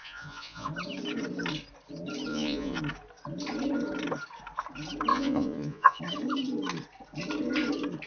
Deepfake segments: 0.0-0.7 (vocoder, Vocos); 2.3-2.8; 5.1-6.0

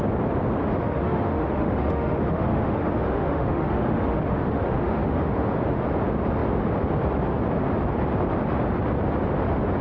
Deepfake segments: 0.6-5.5 (autoencoder, DAC-VAE)

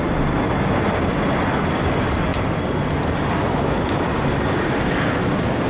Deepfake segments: none

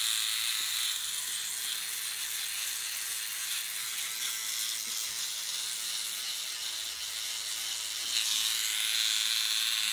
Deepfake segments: 0.5-1.5 (vocoder, BigVGAN v2)